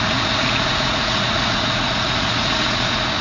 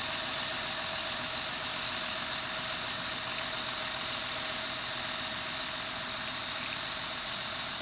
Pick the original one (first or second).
second